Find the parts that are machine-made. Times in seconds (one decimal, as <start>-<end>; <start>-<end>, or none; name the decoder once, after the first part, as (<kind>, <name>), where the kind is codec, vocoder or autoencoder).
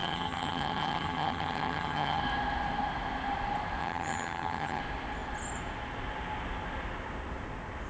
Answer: 0.0-2.2 (vocoder, HiFi-GAN); 3.8-4.8